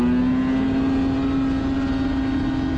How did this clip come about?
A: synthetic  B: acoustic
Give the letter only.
B